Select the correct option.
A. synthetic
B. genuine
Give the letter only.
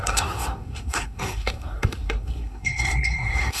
A